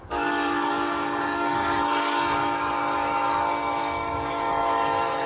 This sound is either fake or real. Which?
fake